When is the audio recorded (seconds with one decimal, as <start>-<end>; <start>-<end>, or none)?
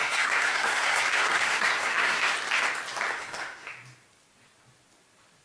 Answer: 2.3-3.1; 3.7-5.4